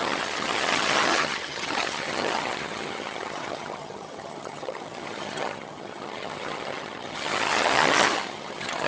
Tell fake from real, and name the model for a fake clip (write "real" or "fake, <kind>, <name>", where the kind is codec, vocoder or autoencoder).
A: fake, vocoder, HiFi-GAN